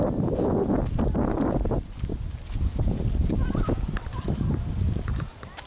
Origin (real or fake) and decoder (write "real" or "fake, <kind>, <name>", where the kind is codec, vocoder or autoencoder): real